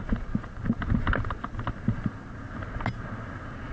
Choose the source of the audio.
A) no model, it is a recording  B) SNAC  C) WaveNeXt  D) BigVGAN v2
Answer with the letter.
A